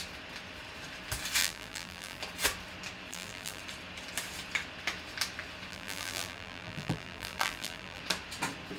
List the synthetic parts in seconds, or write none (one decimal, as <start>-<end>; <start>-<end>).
1.4-2.2; 3.1-3.6; 5.7-8.0